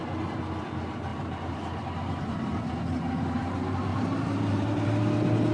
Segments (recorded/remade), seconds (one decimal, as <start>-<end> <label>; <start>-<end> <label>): 0.0-3.9 recorded; 3.9-5.0 remade; 5.0-5.5 recorded